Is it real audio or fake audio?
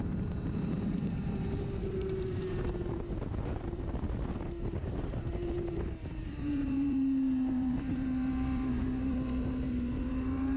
fake